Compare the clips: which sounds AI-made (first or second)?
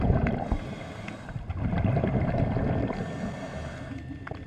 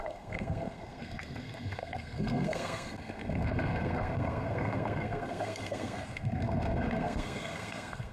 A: second